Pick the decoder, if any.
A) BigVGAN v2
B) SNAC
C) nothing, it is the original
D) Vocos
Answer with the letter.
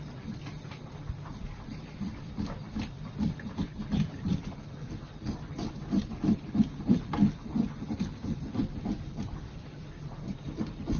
A